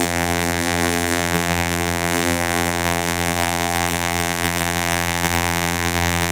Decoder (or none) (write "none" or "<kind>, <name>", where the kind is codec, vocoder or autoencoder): vocoder, BigVGAN v2